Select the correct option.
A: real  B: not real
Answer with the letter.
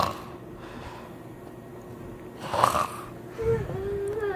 A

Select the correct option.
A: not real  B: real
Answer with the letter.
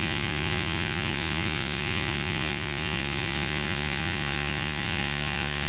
A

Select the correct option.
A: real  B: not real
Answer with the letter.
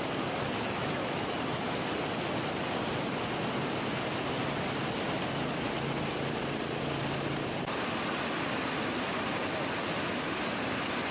A